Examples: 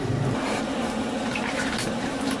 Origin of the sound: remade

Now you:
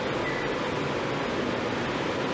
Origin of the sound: recorded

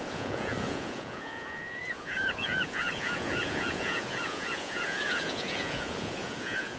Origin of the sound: remade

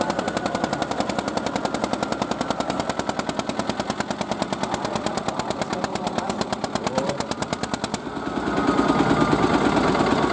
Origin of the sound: recorded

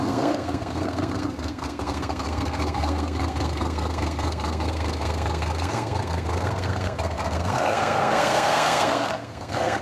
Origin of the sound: remade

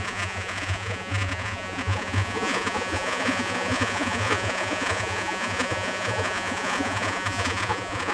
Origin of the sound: remade